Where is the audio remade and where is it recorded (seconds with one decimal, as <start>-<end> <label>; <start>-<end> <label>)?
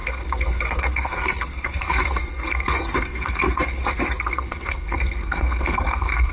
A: 0.0-3.8 remade; 3.8-4.3 recorded; 4.3-6.3 remade